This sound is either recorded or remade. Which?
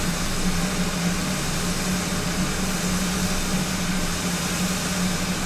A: recorded